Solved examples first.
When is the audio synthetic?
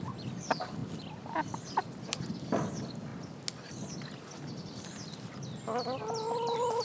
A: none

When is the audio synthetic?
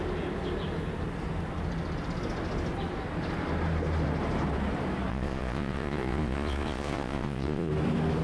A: 5.1-7.7 (vocoder, Vocos)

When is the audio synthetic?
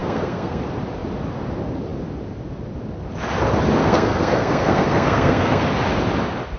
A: 0.0-0.6 (codec, SNAC); 3.8-5.6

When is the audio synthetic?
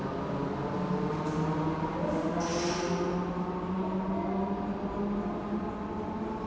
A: none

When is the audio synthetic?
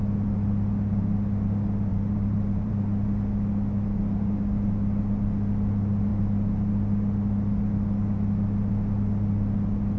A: 1.9-2.7 (vocoder, BigVGAN v2)